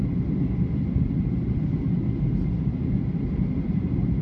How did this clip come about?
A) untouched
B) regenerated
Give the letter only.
A